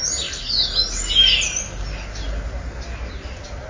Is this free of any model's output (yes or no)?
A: yes